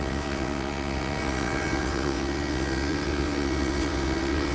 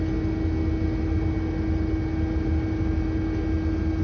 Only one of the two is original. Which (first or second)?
second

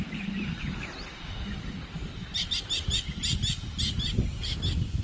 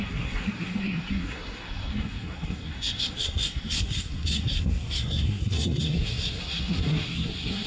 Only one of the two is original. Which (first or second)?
first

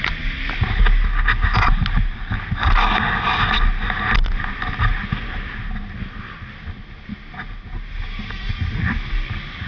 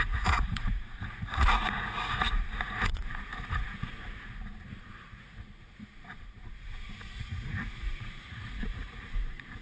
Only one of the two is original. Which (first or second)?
first